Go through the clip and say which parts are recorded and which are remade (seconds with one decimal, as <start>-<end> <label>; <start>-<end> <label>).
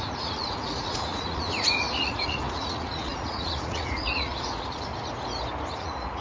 0.0-4.9 remade; 4.9-5.8 recorded; 5.8-6.2 remade